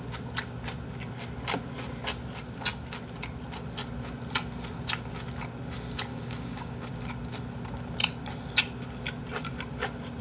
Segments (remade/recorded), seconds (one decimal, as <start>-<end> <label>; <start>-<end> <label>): 0.0-6.1 recorded; 6.1-6.9 remade; 6.9-10.2 recorded